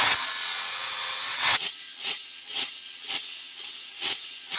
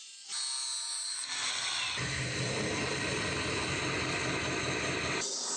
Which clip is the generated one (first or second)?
first